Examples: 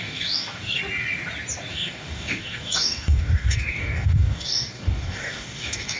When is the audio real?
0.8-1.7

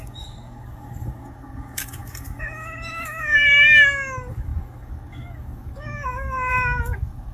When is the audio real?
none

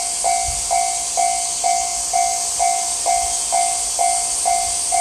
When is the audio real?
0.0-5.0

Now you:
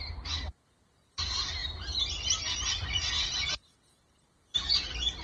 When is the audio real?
0.0-5.2